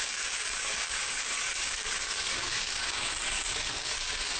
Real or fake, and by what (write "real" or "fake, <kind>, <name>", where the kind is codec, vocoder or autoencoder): fake, codec, DAC